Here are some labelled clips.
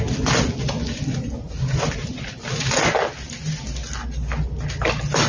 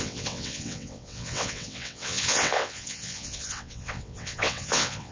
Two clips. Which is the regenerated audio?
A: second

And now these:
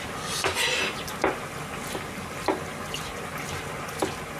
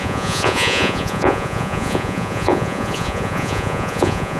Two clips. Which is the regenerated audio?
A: second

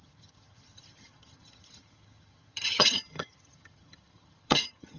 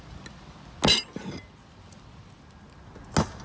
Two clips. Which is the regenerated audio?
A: first